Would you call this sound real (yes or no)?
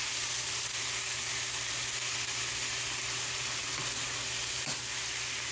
yes